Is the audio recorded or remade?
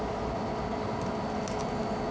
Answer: recorded